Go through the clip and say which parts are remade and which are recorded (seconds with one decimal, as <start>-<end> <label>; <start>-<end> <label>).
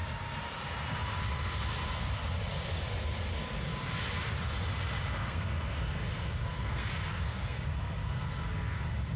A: 0.0-5.1 recorded; 5.1-9.2 remade